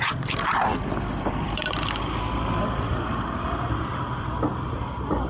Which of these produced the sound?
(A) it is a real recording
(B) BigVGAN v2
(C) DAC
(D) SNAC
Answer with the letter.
B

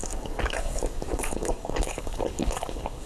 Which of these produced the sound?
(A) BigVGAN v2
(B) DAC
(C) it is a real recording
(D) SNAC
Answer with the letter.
B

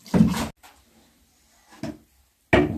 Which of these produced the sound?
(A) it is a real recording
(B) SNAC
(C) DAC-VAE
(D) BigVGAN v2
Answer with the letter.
A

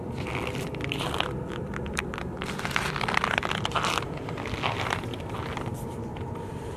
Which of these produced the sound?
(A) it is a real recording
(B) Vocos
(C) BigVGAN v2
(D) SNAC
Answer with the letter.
C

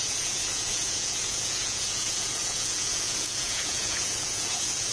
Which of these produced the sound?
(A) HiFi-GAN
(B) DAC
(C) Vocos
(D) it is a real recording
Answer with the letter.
C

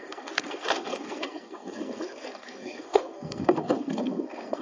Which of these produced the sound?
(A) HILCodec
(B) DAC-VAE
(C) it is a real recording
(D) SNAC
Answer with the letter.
D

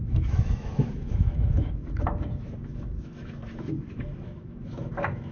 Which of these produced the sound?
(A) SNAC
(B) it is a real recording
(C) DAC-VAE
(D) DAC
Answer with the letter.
C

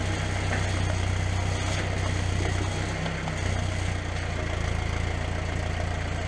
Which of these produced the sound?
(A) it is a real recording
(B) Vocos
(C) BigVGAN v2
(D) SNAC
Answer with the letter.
A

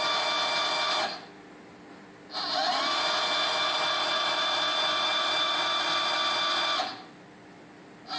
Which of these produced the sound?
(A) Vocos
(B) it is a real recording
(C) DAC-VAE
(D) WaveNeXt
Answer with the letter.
B